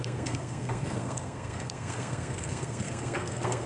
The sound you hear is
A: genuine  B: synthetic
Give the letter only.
B